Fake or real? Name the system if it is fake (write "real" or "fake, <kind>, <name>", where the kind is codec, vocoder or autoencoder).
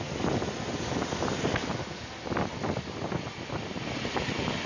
real